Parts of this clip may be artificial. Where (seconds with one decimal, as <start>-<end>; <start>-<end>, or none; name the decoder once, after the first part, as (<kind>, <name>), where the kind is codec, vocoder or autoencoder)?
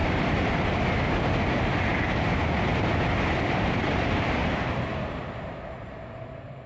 0.0-0.6 (vocoder, BigVGAN v2); 2.7-5.2